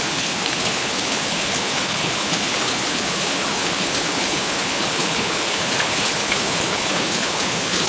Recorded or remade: remade